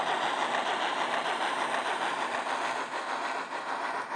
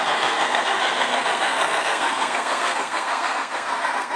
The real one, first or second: first